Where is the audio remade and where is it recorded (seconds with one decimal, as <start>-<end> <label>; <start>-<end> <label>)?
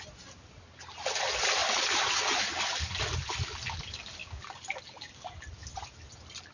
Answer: 0.0-6.5 recorded